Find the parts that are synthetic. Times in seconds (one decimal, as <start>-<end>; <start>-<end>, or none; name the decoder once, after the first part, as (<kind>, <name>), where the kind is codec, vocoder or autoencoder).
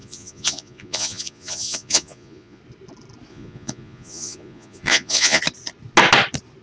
0.0-2.6 (vocoder, Vocos); 3.3-5.4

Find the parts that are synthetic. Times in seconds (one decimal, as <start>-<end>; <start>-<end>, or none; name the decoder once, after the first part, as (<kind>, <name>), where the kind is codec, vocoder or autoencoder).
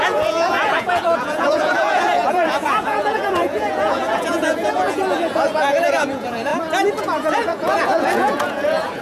0.0-6.5 (vocoder, Vocos); 7.0-9.0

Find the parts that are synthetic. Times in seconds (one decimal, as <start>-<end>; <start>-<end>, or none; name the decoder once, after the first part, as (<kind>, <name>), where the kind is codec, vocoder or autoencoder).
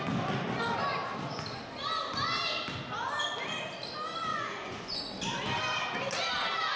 4.3-5.0 (vocoder, Vocos)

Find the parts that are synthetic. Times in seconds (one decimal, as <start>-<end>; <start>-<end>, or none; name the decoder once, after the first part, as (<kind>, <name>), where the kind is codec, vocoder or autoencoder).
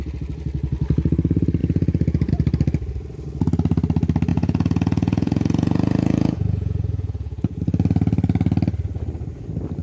1.6-2.3 (vocoder, Vocos); 4.3-7.6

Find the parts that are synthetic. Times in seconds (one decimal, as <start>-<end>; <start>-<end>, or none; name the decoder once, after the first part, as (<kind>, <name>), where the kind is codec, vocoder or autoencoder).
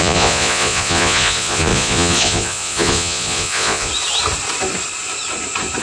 0.0-3.9 (vocoder, Vocos)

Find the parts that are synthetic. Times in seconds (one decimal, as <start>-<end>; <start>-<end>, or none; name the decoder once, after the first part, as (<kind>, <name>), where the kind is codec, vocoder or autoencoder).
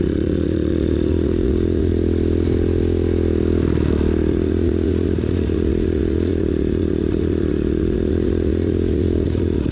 0.0-1.9 (vocoder, Vocos); 4.3-9.7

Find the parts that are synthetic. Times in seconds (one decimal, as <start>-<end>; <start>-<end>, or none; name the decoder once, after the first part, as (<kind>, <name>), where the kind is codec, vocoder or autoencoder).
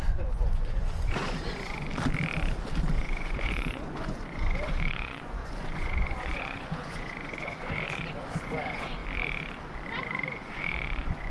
0.0-1.9 (vocoder, Vocos); 2.9-9.0; 10.0-11.3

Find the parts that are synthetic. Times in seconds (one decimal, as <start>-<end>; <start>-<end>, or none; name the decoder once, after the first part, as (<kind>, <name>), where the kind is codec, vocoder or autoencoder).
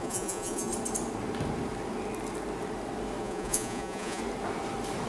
0.0-0.7 (vocoder, Vocos); 3.2-4.2